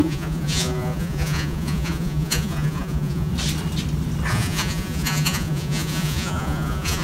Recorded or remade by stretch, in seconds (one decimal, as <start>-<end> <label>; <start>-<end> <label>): 0.0-3.3 remade; 3.3-4.3 recorded; 4.3-7.0 remade